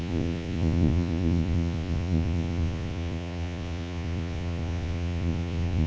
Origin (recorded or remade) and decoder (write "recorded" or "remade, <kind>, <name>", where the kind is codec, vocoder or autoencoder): remade, vocoder, Vocos